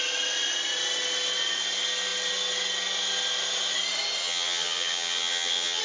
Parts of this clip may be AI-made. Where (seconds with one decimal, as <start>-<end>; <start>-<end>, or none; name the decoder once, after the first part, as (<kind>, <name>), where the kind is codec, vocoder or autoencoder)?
4.2-5.8 (vocoder, HiFi-GAN)